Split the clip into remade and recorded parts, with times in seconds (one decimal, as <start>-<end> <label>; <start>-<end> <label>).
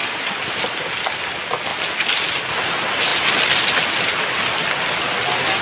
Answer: 0.0-5.6 recorded